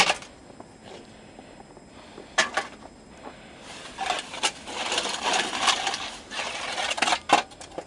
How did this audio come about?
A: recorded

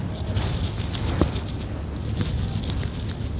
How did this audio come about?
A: recorded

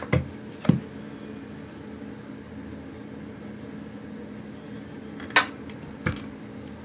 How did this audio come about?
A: recorded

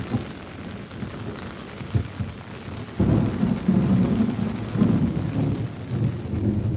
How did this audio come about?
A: recorded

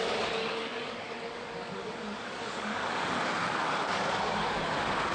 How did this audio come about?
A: remade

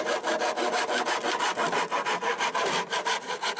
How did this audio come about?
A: recorded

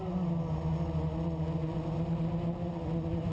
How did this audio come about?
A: recorded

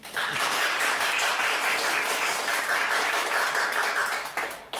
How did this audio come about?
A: remade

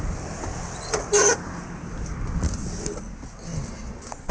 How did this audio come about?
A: recorded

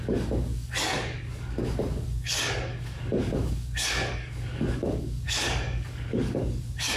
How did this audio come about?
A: remade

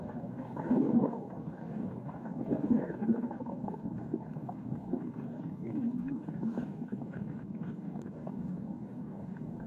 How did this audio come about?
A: remade